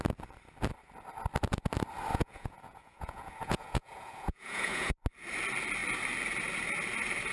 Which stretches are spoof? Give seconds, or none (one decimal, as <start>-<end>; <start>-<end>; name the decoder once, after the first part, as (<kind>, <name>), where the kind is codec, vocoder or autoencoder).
2.1-4.9 (vocoder, Vocos)